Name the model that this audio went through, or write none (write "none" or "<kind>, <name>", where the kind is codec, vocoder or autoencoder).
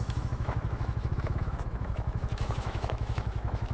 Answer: autoencoder, DAC-VAE